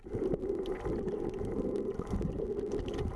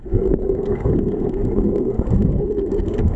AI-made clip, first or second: second